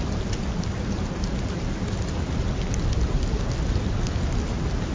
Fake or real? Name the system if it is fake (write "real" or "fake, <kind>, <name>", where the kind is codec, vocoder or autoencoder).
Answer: real